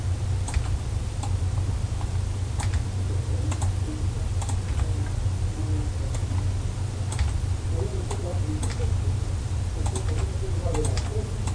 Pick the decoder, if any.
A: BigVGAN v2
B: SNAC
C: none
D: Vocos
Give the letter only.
C